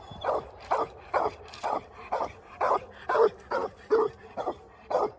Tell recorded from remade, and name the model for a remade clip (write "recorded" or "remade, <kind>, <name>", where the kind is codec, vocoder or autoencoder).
remade, vocoder, BigVGAN v2